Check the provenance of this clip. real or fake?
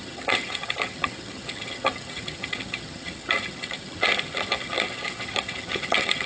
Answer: fake